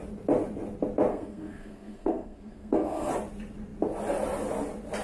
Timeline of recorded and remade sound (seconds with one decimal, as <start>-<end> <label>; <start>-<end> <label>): 0.0-1.1 recorded; 1.1-3.1 remade; 3.1-5.0 recorded